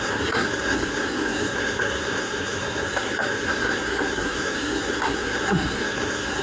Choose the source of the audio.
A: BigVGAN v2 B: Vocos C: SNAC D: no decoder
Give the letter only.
C